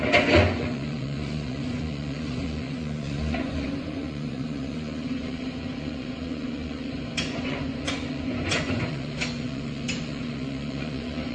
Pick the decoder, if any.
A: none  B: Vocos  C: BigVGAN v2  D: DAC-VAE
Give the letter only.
B